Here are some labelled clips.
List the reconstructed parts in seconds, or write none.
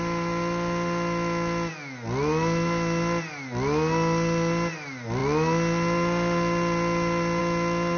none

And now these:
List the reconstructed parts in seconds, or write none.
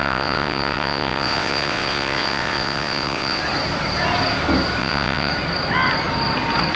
0.0-3.4 (vocoder, WaveNeXt); 4.8-5.3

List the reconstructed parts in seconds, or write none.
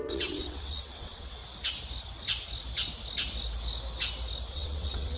0.0-1.4 (vocoder, WaveNeXt); 4.5-5.2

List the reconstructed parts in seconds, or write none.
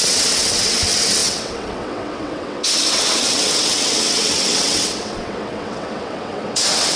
0.0-7.0 (vocoder, WaveNeXt)